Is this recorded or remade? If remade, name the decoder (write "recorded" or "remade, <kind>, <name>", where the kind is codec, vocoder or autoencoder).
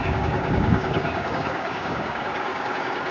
remade, codec, DAC